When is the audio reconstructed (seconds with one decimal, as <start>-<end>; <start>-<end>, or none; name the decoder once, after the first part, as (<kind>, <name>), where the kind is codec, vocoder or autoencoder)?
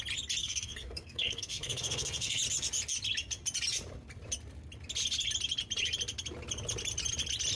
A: 0.4-2.4 (codec, SNAC)